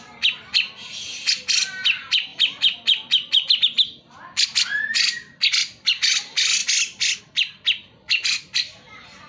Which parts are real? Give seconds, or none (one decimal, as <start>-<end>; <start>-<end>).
0.0-9.3